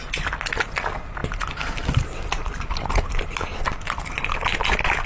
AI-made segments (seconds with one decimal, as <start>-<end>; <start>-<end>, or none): none